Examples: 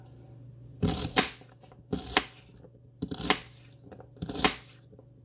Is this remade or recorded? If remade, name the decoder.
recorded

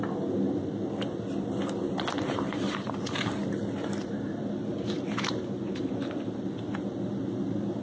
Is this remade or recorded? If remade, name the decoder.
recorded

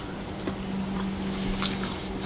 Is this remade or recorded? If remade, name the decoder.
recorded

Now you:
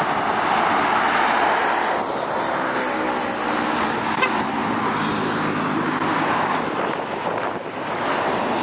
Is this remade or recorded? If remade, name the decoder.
recorded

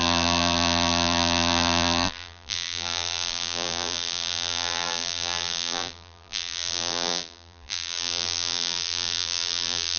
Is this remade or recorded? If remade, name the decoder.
remade, vocoder, BigVGAN v2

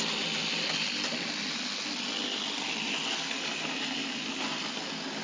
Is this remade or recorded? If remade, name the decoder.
recorded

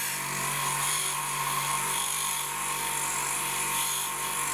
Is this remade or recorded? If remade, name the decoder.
remade, vocoder, BigVGAN v2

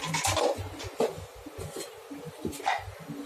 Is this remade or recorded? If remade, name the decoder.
recorded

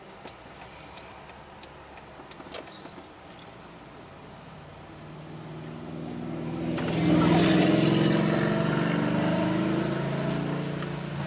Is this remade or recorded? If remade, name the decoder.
recorded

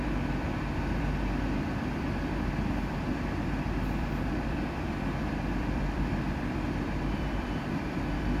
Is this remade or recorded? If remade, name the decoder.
remade, vocoder, BigVGAN v2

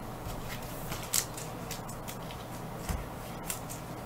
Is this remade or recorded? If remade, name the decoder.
recorded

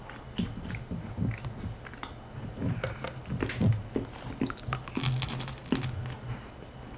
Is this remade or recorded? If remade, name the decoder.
recorded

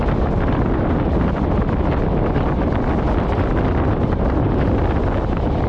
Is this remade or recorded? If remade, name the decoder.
recorded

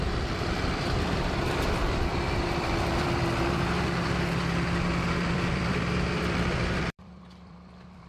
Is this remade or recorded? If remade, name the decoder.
remade, vocoder, BigVGAN v2